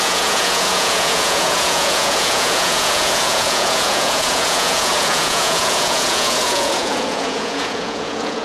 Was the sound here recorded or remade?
remade